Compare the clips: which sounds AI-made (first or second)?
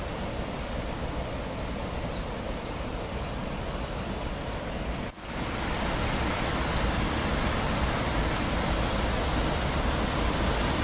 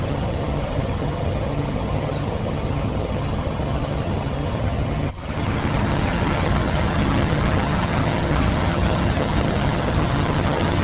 second